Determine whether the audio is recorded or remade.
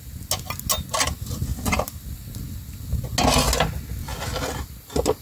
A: recorded